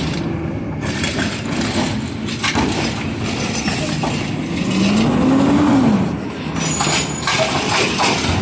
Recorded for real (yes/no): yes